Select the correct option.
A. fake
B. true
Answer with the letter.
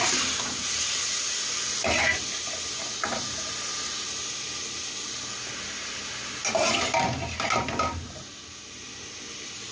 B